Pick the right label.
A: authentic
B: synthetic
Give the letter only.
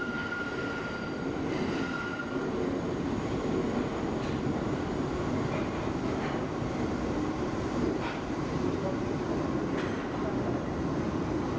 B